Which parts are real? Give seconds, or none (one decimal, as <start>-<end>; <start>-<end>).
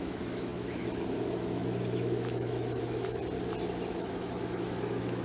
3.2-3.9